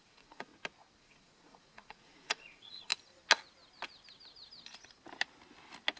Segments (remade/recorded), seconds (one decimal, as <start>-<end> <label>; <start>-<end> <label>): 0.0-0.5 remade; 0.5-1.0 recorded; 1.0-2.9 remade; 2.9-6.0 recorded